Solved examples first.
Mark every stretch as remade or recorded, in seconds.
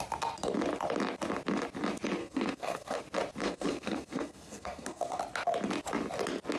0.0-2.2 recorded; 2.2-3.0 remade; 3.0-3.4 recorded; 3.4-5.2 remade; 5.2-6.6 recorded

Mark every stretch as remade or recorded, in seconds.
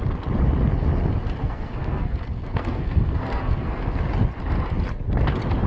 0.0-1.4 recorded; 1.4-4.0 remade; 4.0-5.7 recorded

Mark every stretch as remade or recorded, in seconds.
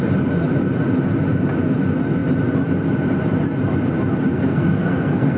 0.0-4.3 recorded; 4.3-5.4 remade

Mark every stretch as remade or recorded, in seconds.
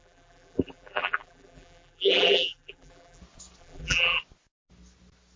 0.0-3.2 remade; 3.2-3.6 recorded; 3.6-4.2 remade; 4.2-5.4 recorded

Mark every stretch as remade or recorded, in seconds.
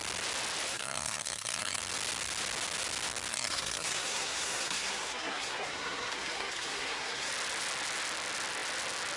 0.0-0.7 recorded; 0.7-1.8 remade; 1.8-3.3 recorded; 3.3-7.3 remade; 7.3-9.2 recorded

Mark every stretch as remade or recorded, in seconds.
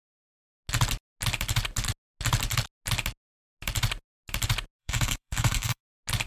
0.0-4.8 recorded; 4.8-5.8 remade; 5.8-6.3 recorded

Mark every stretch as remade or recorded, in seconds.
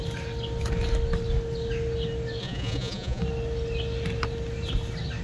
0.0-2.4 recorded; 2.4-3.2 remade; 3.2-5.2 recorded